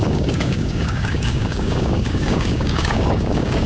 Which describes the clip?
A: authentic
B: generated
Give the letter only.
B